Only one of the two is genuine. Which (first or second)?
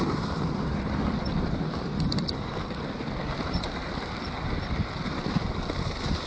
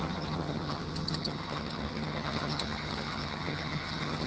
first